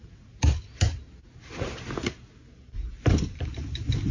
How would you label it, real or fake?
real